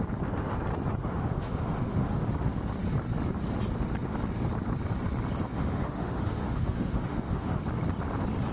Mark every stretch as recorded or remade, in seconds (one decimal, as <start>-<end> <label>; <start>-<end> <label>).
0.0-1.0 recorded; 1.0-2.2 remade; 2.2-5.5 recorded; 5.5-7.6 remade; 7.6-8.5 recorded